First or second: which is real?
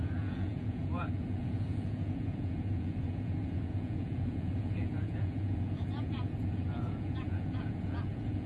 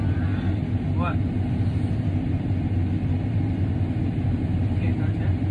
second